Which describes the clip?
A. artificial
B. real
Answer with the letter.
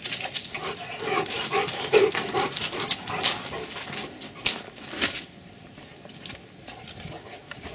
B